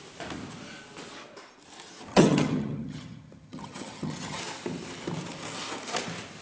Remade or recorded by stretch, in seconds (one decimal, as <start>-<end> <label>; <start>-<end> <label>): 0.0-2.1 recorded; 2.1-4.4 remade; 4.4-6.4 recorded